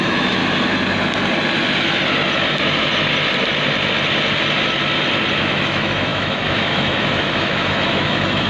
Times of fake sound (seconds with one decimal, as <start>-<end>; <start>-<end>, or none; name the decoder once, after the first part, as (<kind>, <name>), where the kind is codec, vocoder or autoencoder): 0.0-0.4 (autoencoder, DAC-VAE); 5.4-8.5